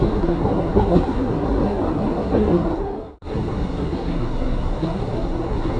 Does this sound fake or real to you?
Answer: fake